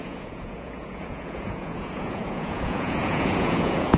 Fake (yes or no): yes